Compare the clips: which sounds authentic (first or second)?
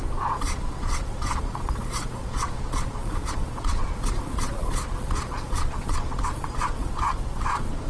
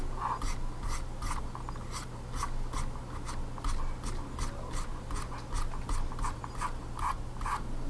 second